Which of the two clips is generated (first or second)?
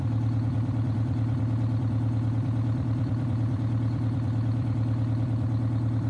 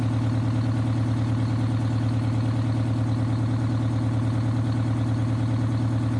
first